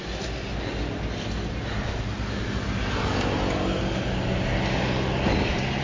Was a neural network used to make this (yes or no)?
no